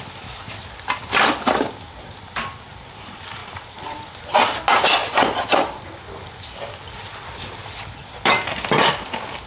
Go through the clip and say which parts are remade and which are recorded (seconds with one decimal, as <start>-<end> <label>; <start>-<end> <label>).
0.0-1.0 recorded; 1.0-1.5 remade; 1.5-3.4 recorded; 3.4-4.2 remade; 4.2-7.6 recorded; 7.6-8.8 remade; 8.8-9.5 recorded